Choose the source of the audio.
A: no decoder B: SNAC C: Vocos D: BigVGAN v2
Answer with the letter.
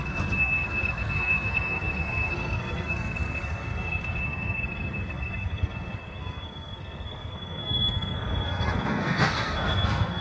B